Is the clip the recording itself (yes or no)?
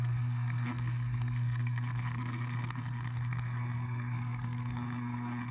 no